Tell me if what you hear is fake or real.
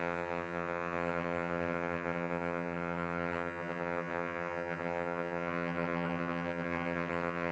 fake